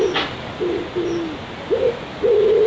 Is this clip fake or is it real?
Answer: real